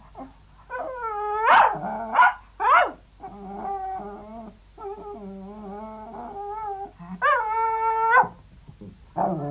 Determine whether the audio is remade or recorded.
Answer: recorded